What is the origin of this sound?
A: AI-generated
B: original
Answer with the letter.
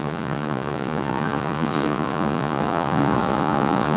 A